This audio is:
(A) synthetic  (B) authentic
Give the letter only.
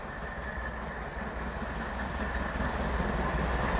B